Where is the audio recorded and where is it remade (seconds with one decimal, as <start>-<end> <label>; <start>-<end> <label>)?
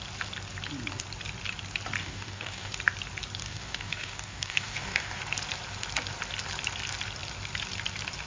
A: 0.0-2.0 recorded; 2.0-2.7 remade; 2.7-3.4 recorded; 3.4-5.2 remade; 5.2-8.3 recorded